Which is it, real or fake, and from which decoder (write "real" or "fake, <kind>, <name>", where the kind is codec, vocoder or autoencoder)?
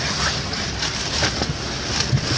real